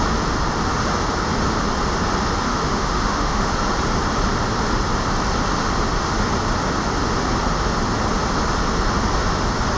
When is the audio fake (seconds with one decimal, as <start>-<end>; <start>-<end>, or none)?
2.5-3.5